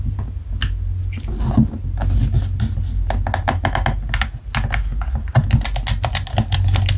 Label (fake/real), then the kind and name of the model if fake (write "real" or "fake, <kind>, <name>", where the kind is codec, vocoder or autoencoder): real